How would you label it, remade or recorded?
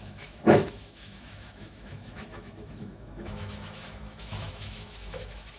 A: remade